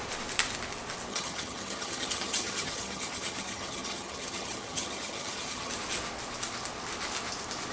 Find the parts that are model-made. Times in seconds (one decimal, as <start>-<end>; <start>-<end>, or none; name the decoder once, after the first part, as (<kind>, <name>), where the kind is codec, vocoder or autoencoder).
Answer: 1.1-5.7 (vocoder, HiFi-GAN)